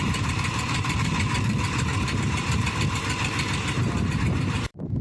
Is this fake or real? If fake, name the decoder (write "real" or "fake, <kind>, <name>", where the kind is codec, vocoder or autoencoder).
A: fake, vocoder, BigVGAN v2